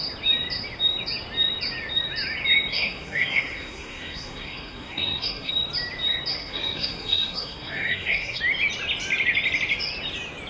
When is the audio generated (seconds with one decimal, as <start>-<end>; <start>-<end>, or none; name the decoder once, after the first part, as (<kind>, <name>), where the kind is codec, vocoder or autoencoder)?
2.7-5.5 (codec, SNAC); 6.3-8.4